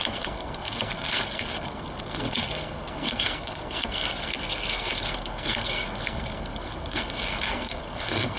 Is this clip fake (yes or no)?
yes